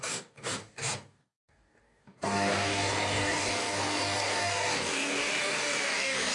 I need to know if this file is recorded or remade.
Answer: remade